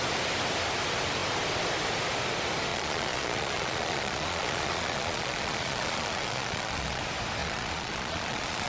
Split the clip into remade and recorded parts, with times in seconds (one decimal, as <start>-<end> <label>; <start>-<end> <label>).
0.0-2.7 recorded; 2.7-7.0 remade; 7.0-7.4 recorded; 7.4-8.7 remade